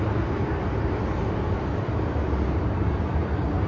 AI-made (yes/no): no